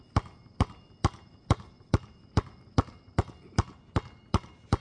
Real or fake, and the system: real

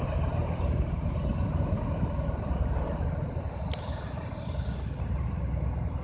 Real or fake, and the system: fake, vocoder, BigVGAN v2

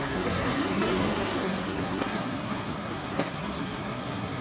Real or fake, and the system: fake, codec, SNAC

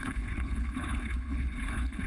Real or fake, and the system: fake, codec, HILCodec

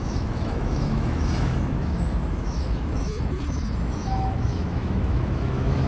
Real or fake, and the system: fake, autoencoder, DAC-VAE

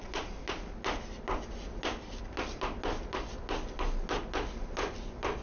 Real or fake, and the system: real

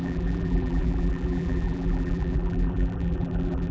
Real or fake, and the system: fake, vocoder, BigVGAN v2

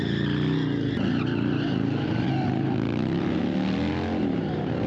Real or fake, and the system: real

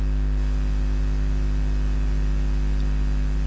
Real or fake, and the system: fake, vocoder, BigVGAN v2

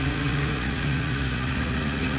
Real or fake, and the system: fake, vocoder, Vocos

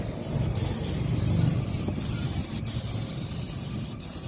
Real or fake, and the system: real